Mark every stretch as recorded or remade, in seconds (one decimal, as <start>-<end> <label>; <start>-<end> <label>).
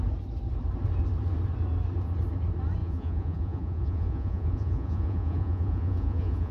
0.0-2.8 recorded; 2.8-6.5 remade